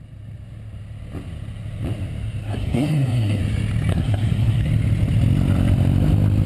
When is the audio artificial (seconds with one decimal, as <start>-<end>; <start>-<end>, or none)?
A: 2.4-3.4; 3.9-4.7